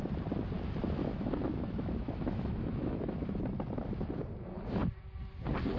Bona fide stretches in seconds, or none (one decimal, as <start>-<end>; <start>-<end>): 0.0-1.0; 3.4-5.8